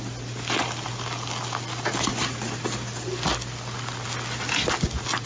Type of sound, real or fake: real